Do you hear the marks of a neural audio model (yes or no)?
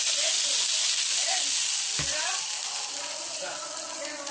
no